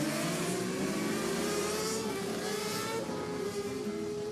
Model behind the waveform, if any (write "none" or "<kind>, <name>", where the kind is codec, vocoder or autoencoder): vocoder, BigVGAN v2